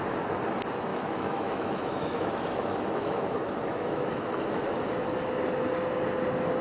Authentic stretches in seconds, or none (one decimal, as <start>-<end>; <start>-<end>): 0.0-0.9; 4.9-6.6